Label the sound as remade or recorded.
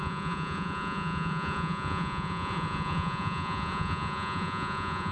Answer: remade